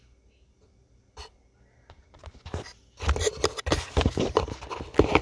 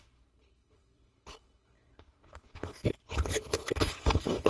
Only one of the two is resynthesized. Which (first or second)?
second